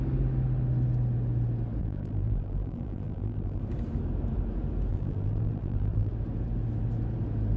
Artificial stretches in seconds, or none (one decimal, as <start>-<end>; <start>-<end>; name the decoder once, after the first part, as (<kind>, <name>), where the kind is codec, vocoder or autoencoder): 1.8-3.6 (vocoder, BigVGAN v2); 4.9-6.1